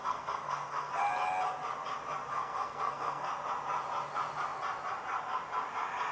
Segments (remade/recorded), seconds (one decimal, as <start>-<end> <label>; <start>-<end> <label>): 0.0-0.9 remade; 0.9-2.3 recorded; 2.3-3.3 remade; 3.3-6.1 recorded